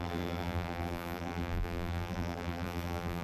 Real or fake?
fake